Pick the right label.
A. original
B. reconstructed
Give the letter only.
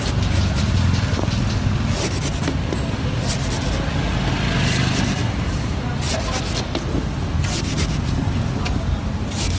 A